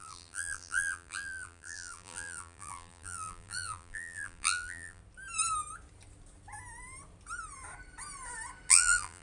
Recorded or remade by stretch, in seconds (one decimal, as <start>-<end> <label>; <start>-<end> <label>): 0.0-5.0 remade; 5.0-8.7 recorded; 8.7-9.2 remade